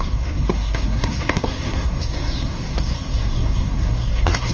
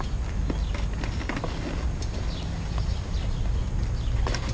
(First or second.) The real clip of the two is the second